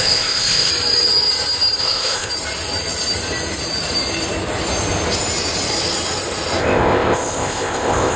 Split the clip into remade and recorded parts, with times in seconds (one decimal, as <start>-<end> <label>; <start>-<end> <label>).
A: 0.0-0.7 remade; 0.7-1.8 recorded; 1.8-2.3 remade; 2.3-6.6 recorded; 6.6-8.2 remade